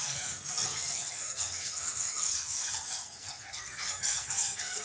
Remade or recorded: remade